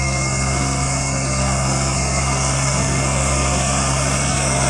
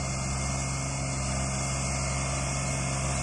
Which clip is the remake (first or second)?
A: first